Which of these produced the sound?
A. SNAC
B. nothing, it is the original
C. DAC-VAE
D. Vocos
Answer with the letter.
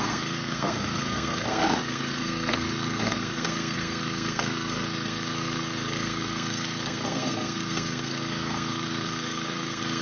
A